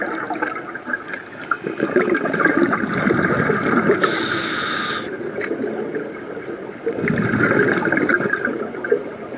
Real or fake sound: real